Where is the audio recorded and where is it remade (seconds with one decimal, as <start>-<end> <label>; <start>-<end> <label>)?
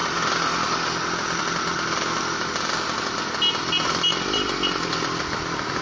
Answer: 0.0-5.8 recorded